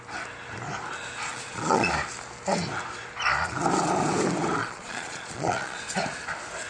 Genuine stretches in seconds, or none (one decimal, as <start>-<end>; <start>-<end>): 0.0-1.3; 1.9-4.6; 5.8-6.7